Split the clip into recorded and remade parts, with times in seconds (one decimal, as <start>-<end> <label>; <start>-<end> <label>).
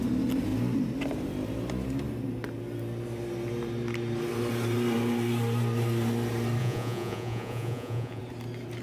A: 0.0-6.6 recorded; 6.6-8.2 remade; 8.2-8.8 recorded